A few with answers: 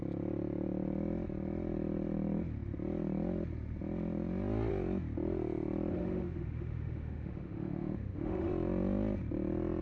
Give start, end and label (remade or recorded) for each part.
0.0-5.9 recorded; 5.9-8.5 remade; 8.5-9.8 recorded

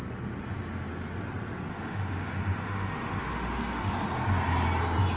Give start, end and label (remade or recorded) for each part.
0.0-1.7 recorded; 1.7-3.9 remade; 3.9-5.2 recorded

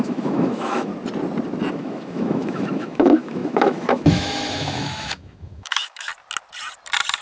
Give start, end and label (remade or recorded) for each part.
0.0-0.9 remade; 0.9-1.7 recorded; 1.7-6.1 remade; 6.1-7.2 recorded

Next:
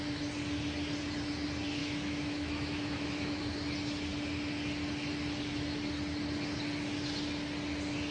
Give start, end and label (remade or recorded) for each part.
0.0-1.8 recorded; 1.8-3.4 remade; 3.4-8.1 recorded

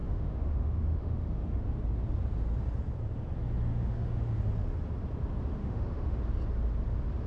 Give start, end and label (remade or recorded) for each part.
0.0-1.6 remade; 1.6-3.7 recorded; 3.7-4.4 remade; 4.4-5.6 recorded; 5.6-6.2 remade; 6.2-7.3 recorded